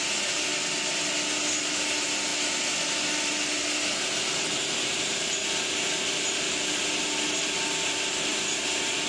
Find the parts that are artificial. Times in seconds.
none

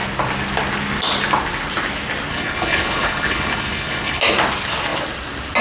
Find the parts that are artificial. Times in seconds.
2.3-4.2 (codec, HILCodec)

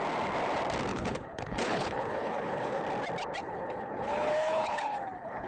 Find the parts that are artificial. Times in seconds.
0.9-2.8 (codec, HILCodec); 3.4-5.5

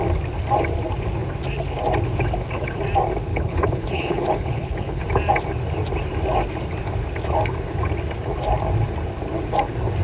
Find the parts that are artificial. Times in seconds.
3.3-5.0 (codec, HILCodec)

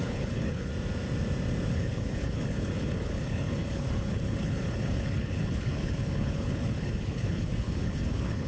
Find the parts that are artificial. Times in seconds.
0.0-0.7 (codec, HILCodec); 1.7-8.5

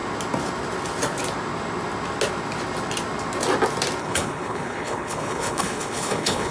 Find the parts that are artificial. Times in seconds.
4.0-6.5 (codec, HILCodec)

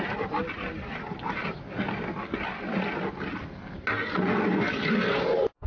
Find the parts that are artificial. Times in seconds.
none

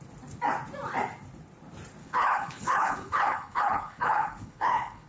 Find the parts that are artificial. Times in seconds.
2.0-5.1 (codec, HILCodec)